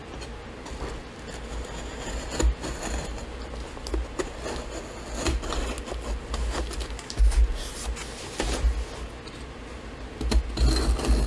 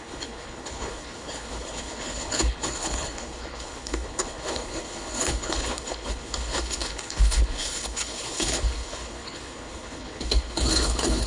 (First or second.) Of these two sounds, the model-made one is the second